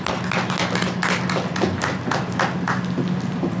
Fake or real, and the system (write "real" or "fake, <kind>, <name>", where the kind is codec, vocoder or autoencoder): real